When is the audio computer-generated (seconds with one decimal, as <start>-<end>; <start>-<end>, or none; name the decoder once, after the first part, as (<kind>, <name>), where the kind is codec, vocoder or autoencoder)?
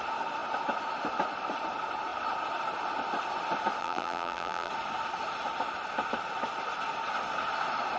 3.8-4.7 (vocoder, BigVGAN v2)